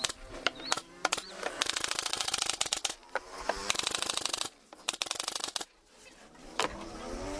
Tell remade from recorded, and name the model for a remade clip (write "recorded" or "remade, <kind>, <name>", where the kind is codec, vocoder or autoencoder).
remade, vocoder, BigVGAN v2